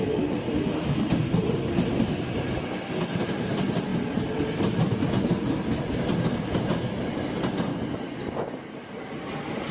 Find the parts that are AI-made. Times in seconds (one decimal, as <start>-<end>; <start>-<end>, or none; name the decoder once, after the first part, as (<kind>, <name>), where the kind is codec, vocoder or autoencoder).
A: none